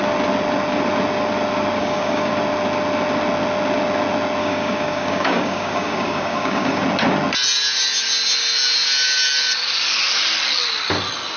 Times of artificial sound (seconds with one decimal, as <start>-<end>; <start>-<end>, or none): 1.8-2.3; 4.4-6.8